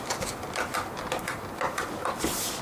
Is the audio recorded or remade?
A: recorded